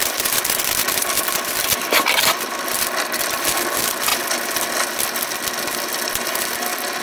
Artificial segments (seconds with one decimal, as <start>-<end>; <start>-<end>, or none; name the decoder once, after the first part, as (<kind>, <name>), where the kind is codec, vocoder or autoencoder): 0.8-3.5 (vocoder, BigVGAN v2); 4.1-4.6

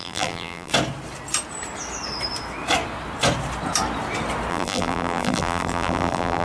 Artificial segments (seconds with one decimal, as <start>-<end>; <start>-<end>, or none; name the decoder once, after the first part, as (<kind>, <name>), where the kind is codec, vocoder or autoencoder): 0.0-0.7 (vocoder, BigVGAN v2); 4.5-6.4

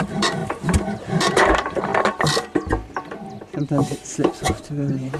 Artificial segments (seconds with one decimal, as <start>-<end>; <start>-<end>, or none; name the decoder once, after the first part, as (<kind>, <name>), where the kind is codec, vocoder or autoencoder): 0.0-0.4 (vocoder, BigVGAN v2); 1.0-1.9; 3.6-5.2

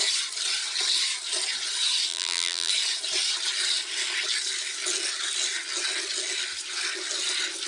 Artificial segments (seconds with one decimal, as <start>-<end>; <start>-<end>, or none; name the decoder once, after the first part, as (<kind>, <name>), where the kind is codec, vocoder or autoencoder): 2.1-2.7 (vocoder, BigVGAN v2)

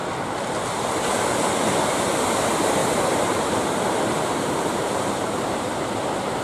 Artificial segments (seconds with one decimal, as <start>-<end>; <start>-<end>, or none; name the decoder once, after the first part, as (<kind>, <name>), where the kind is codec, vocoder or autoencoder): 2.8-6.4 (vocoder, BigVGAN v2)